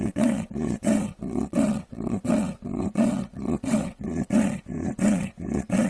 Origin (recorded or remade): remade